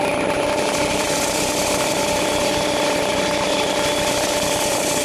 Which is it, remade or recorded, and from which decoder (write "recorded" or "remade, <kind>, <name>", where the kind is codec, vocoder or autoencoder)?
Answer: remade, vocoder, BigVGAN v2